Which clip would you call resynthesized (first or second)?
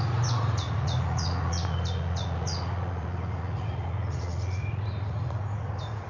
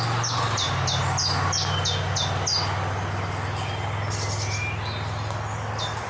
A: first